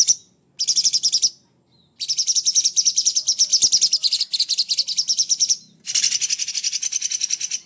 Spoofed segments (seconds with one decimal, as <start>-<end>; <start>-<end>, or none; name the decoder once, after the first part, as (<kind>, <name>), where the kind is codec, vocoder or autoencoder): none